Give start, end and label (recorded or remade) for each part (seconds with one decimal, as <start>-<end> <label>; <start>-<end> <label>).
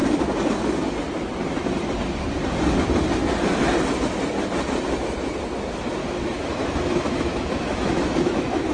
0.0-6.0 recorded; 6.0-8.7 remade